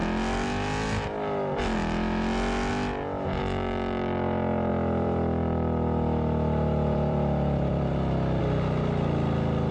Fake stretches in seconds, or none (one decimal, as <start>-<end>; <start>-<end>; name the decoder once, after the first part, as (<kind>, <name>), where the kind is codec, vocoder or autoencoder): 4.7-8.4 (vocoder, BigVGAN v2)